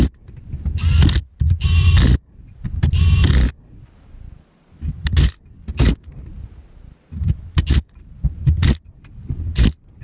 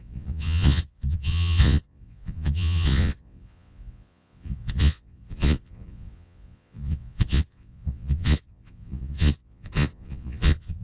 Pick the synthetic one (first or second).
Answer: second